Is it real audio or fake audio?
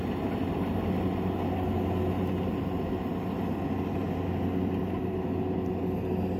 real